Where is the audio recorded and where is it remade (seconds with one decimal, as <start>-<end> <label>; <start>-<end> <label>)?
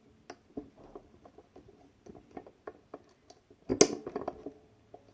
0.0-5.1 recorded